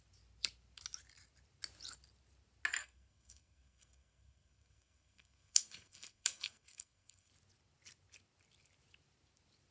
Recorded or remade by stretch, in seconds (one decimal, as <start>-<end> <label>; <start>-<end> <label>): 0.0-2.8 recorded; 2.8-7.3 remade; 7.3-9.7 recorded

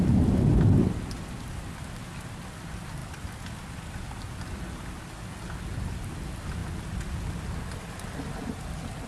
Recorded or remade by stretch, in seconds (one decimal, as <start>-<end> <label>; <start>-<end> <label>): 0.0-9.1 recorded

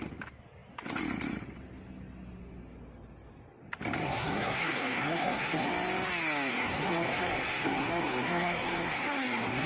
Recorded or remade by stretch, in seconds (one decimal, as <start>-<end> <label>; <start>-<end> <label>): 0.0-4.0 recorded; 4.0-5.7 remade; 5.7-6.5 recorded; 6.5-9.7 remade

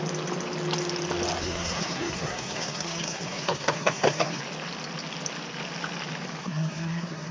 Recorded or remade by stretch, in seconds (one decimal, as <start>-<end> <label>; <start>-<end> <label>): 0.0-1.4 recorded; 1.4-4.4 remade; 4.4-6.4 recorded; 6.4-7.3 remade